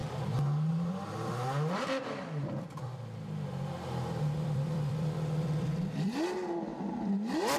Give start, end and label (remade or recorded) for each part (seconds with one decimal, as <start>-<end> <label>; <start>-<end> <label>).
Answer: 0.0-0.7 recorded; 0.7-6.7 remade; 6.7-7.6 recorded